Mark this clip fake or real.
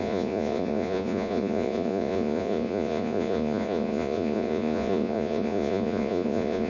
fake